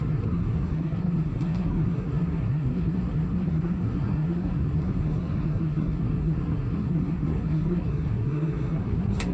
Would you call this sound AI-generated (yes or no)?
yes